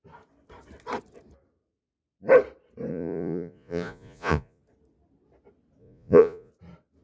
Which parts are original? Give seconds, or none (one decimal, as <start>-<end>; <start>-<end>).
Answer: 0.0-2.9; 4.6-5.8; 6.5-7.0